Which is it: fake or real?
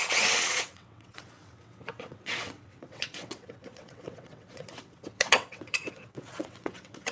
fake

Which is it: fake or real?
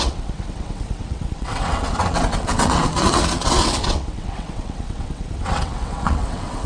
fake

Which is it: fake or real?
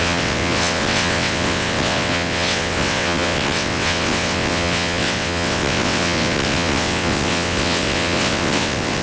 fake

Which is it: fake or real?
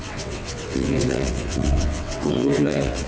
fake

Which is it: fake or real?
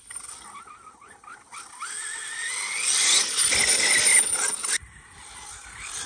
real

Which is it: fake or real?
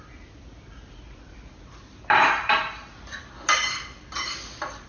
real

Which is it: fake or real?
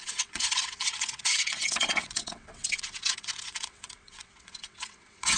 fake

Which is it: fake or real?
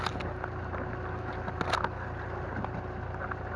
real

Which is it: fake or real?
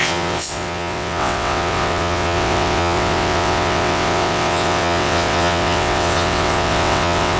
fake